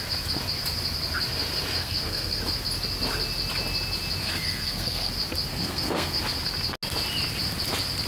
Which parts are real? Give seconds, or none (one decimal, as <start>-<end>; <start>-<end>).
0.0-1.8; 2.4-4.2; 5.1-5.5; 6.2-8.1